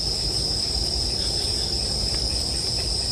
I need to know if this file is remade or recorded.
remade